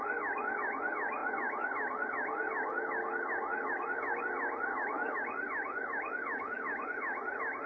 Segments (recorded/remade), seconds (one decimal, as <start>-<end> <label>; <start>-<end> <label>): 0.0-7.7 recorded